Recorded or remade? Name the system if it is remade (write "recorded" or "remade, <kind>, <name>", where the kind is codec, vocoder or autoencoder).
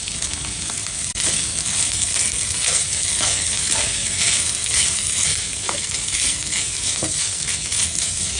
remade, codec, SNAC